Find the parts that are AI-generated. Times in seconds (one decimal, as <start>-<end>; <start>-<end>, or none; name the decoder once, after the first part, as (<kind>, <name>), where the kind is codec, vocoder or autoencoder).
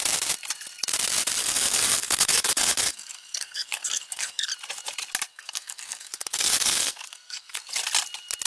1.4-4.5 (codec, SNAC); 5.3-7.7